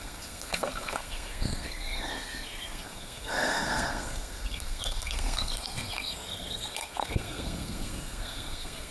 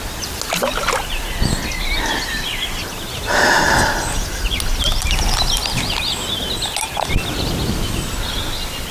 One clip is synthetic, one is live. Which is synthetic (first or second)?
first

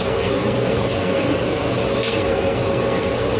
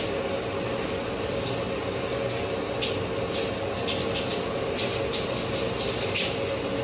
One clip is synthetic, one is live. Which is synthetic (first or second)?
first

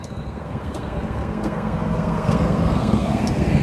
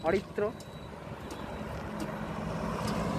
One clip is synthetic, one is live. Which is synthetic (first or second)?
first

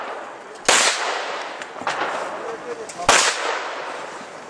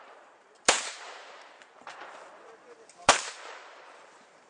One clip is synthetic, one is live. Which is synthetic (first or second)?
second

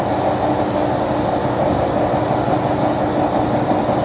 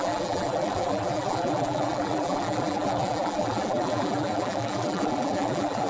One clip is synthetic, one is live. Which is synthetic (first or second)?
second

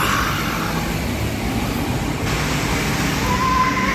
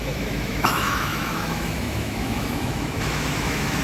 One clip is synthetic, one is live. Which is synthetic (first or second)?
second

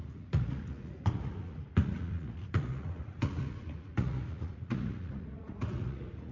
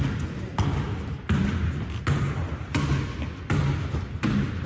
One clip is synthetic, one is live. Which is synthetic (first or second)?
first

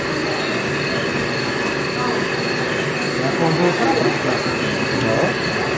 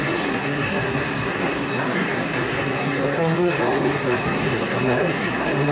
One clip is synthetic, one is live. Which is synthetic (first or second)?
second